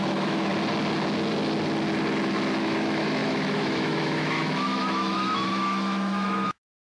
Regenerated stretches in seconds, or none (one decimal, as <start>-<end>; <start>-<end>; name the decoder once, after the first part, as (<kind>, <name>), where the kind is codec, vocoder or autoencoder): 0.0-0.5 (autoencoder, DAC-VAE); 2.6-6.8

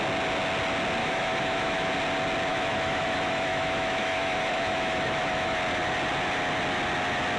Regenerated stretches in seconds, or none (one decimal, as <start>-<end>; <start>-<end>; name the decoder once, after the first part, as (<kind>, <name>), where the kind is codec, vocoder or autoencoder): 1.0-1.9 (autoencoder, DAC-VAE); 2.5-5.6

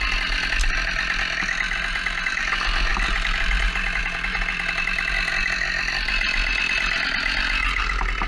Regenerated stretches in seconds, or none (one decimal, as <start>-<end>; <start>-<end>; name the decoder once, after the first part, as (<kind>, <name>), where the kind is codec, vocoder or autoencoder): none